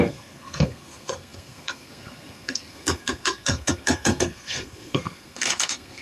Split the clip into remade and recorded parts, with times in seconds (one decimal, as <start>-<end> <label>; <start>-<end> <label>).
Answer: 0.0-6.0 remade